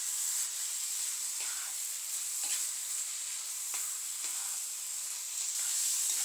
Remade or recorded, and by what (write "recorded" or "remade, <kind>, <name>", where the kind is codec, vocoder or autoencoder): recorded